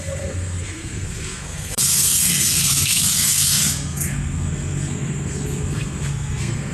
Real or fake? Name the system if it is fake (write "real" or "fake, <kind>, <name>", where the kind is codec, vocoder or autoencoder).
fake, codec, SNAC